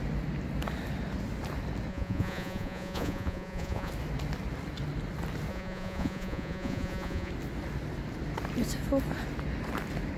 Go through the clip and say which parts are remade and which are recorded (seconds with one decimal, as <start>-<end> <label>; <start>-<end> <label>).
0.0-1.9 recorded; 1.9-3.9 remade; 3.9-5.5 recorded; 5.5-7.3 remade; 7.3-10.2 recorded